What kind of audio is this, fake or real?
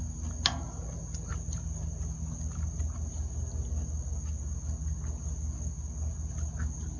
real